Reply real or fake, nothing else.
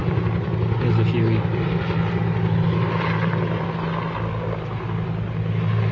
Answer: real